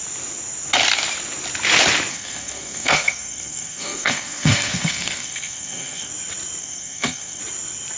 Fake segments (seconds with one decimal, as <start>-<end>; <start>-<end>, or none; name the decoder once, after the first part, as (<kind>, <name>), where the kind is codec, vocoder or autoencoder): 2.1-6.1 (codec, SNAC); 6.6-7.4